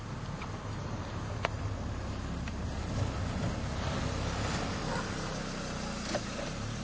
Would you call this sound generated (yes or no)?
no